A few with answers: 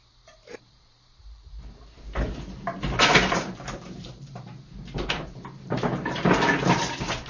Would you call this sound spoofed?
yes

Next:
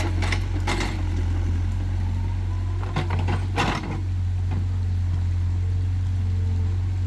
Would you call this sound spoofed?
no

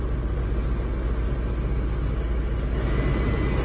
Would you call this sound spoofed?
no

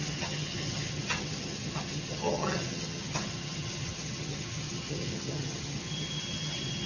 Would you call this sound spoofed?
yes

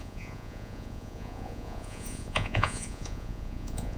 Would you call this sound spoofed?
yes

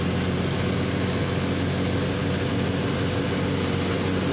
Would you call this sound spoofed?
no